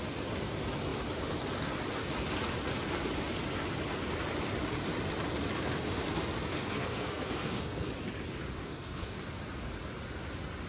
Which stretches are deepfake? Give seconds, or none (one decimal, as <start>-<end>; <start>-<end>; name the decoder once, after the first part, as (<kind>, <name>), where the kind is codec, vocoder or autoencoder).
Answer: 6.5-7.9 (codec, SNAC); 8.6-9.2